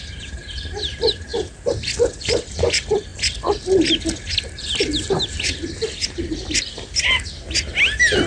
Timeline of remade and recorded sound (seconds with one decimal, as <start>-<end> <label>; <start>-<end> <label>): 0.0-8.3 recorded